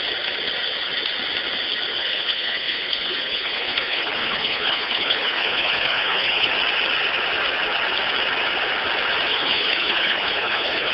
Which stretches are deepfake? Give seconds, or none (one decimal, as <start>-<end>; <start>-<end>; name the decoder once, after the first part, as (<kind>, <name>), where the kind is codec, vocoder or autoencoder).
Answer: 2.0-6.5 (codec, HILCodec); 9.3-10.9